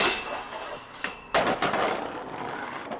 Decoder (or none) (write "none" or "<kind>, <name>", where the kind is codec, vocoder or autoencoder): none